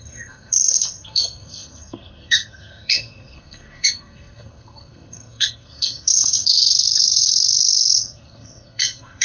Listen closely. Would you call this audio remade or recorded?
remade